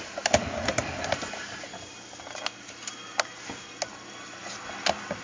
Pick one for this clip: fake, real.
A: real